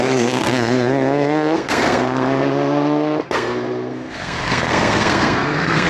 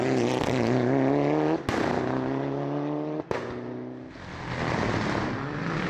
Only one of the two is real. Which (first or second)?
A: second